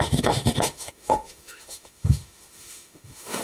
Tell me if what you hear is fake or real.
fake